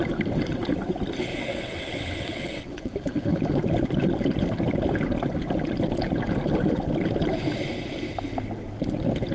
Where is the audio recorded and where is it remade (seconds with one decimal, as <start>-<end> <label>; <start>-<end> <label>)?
0.0-1.3 recorded; 1.3-2.9 remade; 2.9-9.3 recorded